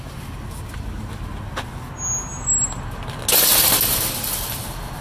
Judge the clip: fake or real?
real